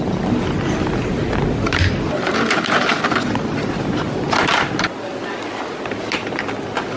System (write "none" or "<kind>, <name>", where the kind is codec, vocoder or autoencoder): none